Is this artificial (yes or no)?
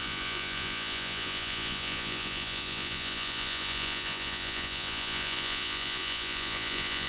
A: yes